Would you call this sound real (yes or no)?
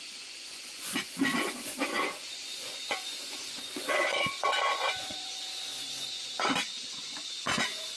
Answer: no